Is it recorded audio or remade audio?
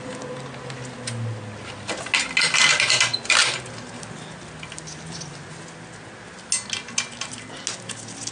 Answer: recorded